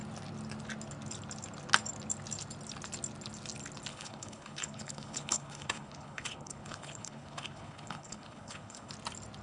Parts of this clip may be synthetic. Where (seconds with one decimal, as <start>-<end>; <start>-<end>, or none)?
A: 3.9-8.9